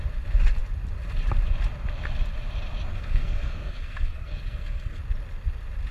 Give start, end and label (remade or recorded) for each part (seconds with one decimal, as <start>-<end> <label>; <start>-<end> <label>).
0.0-2.9 recorded; 2.9-5.0 remade; 5.0-5.9 recorded